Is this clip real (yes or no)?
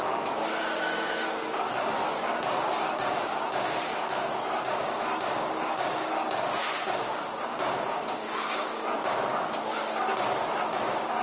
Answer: no